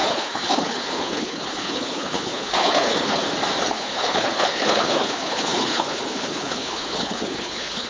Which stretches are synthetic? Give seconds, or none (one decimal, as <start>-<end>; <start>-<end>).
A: 0.0-3.2; 3.7-7.9